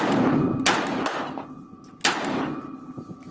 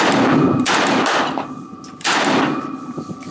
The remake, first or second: second